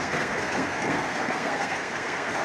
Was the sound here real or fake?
fake